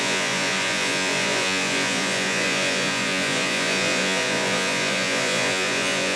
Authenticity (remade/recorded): remade